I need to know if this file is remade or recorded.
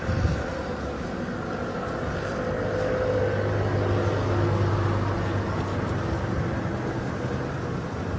recorded